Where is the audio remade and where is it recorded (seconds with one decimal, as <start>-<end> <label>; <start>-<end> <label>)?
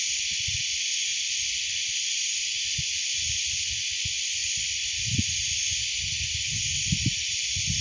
0.0-1.1 recorded; 1.1-1.9 remade; 1.9-4.4 recorded; 4.4-5.3 remade; 5.3-7.8 recorded